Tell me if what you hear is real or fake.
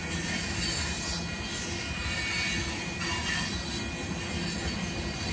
real